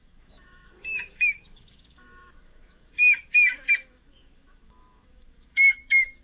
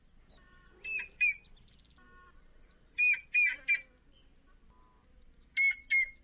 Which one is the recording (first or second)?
second